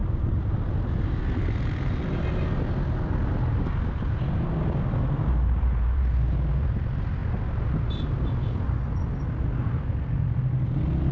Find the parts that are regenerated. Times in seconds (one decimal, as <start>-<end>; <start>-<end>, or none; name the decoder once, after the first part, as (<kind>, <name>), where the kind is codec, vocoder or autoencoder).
0.0-1.0 (vocoder, BigVGAN v2)